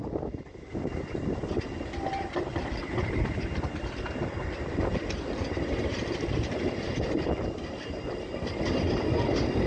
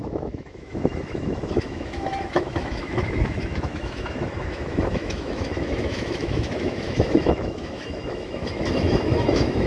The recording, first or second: first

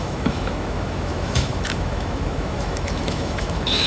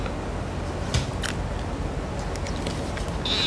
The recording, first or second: second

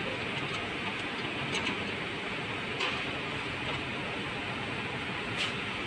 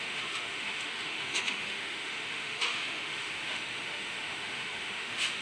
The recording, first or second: first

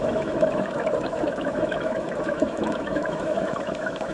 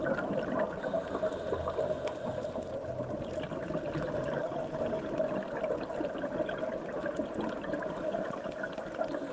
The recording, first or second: second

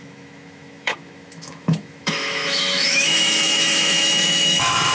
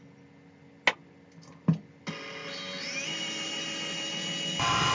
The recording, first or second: second